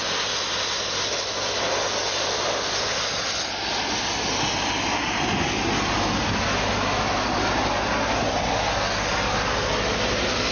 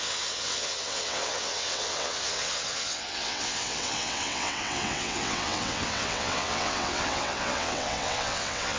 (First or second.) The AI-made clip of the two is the second